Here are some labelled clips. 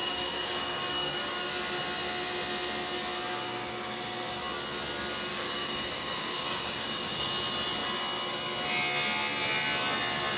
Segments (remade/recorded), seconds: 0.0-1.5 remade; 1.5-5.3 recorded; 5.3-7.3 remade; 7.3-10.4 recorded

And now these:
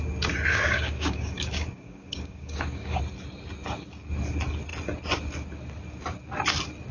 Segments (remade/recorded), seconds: 0.0-0.5 recorded; 0.5-3.0 remade; 3.0-6.9 recorded

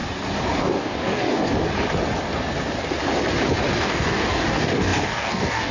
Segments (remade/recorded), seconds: 0.0-0.6 recorded; 0.6-1.4 remade; 1.4-3.8 recorded; 3.8-5.7 remade

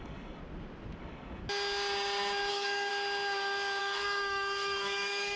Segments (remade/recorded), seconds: 0.0-0.4 remade; 0.4-1.0 recorded; 1.0-1.4 remade; 1.4-2.5 recorded; 2.5-2.9 remade; 2.9-3.8 recorded; 3.8-5.4 remade